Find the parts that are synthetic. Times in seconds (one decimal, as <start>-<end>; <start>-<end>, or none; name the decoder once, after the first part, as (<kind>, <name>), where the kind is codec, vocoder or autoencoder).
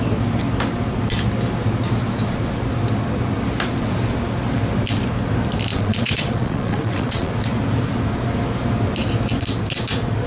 5.7-7.3 (vocoder, Vocos)